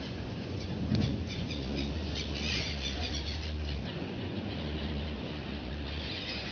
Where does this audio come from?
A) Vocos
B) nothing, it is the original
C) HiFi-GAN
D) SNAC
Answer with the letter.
A